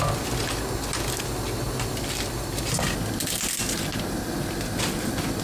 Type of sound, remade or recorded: recorded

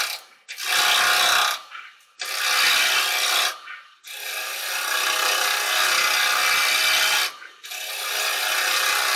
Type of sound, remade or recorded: recorded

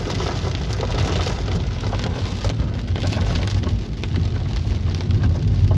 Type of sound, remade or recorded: recorded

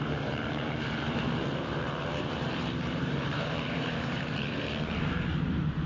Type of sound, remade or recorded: remade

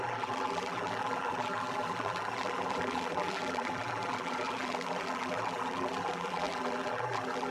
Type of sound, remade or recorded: remade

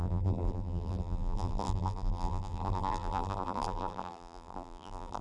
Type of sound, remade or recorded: remade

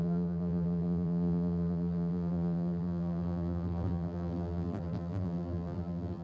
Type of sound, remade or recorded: remade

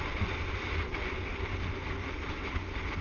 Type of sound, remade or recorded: recorded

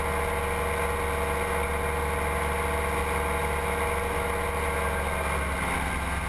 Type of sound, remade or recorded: recorded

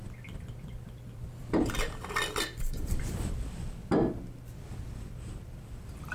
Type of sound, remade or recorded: remade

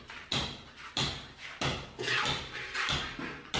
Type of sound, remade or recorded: recorded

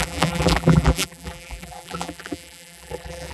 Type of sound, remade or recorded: remade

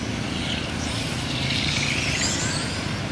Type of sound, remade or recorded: recorded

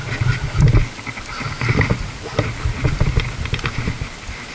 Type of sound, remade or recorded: recorded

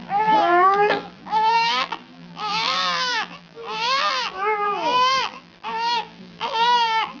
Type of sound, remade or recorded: remade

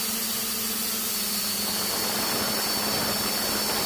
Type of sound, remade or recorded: recorded